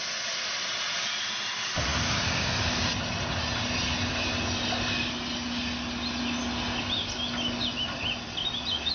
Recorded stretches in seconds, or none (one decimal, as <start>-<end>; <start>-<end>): 0.0-8.9